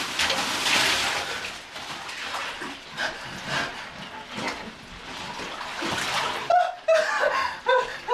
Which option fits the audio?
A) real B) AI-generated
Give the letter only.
A